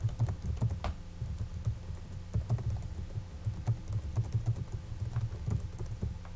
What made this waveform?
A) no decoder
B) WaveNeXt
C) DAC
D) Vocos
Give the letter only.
A